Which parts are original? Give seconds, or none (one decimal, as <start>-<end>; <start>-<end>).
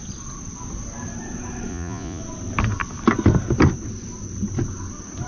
0.0-1.7; 2.2-5.3